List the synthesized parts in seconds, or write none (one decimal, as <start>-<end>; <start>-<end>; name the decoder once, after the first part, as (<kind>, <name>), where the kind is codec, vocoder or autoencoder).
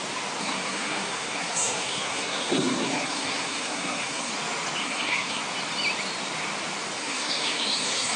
0.4-4.3 (codec, SNAC); 4.8-5.4; 7.0-8.2